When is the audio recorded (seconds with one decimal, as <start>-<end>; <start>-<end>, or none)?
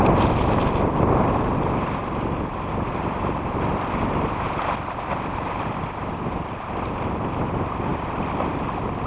0.0-9.1